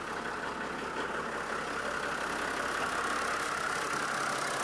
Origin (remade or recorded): recorded